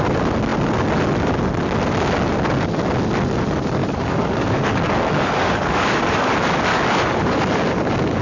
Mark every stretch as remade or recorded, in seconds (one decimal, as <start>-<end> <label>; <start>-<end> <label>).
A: 0.0-3.8 recorded; 3.8-6.3 remade; 6.3-6.7 recorded; 6.7-8.2 remade